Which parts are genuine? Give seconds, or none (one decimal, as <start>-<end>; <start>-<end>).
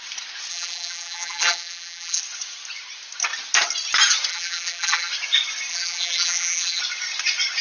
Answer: 0.0-0.5; 2.2-4.3; 5.1-5.7; 6.8-7.6